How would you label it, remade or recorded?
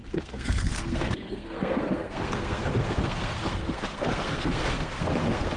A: remade